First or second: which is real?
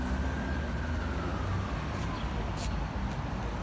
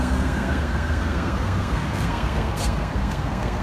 first